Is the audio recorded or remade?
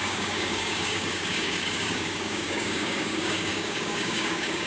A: remade